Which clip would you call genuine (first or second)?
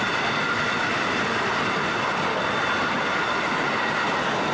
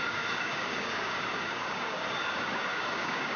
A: first